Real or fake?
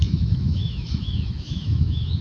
fake